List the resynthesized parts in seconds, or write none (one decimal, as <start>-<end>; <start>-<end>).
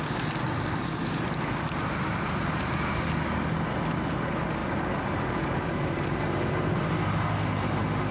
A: none